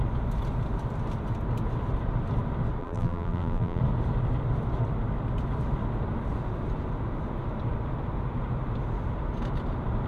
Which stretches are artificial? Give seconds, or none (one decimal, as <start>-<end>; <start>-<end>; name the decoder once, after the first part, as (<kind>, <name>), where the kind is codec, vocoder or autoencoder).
2.8-3.8 (vocoder, BigVGAN v2)